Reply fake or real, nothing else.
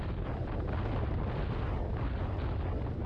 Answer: real